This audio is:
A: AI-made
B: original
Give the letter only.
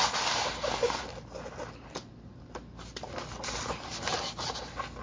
B